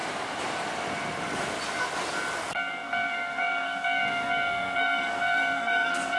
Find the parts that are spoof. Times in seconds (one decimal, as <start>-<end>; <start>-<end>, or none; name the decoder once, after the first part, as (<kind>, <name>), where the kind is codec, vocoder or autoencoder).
2.5-6.2 (codec, SNAC)